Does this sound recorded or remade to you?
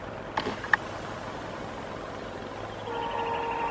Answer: recorded